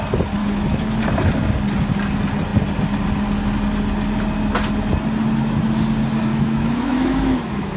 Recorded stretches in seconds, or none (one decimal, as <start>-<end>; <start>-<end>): 0.0-0.4; 1.0-6.3